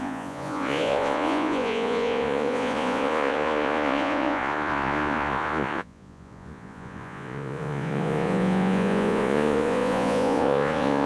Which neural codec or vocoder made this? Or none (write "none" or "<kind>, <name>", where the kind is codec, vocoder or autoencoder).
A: vocoder, Vocos